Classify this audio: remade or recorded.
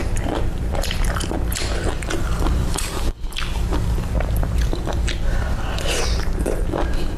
remade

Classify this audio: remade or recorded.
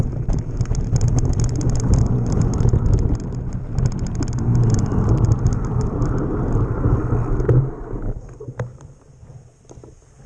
recorded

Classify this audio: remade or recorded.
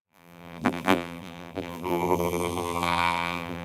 remade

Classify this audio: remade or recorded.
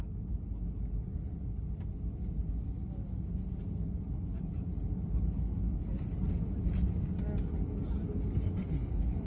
recorded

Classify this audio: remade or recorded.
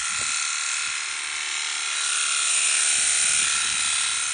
recorded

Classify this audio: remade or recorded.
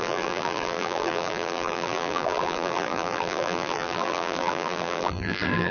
remade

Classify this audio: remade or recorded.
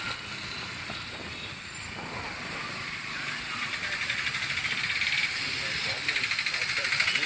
remade